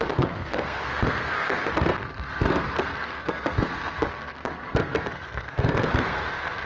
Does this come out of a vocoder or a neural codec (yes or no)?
yes